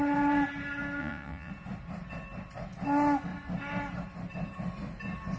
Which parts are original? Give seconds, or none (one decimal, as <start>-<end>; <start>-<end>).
0.0-1.0; 1.5-5.4